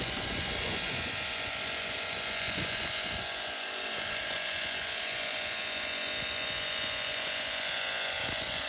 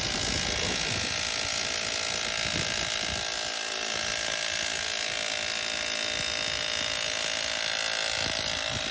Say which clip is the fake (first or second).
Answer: first